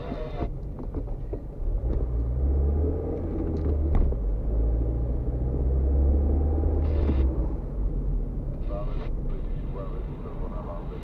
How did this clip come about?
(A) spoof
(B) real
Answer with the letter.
B